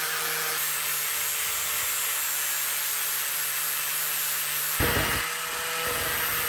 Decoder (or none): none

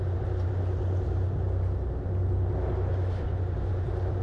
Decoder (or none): none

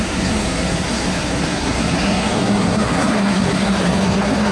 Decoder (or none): codec, SNAC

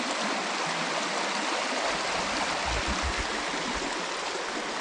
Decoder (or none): none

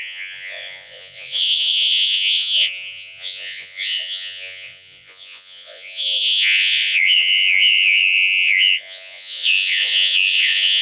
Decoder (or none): vocoder, Vocos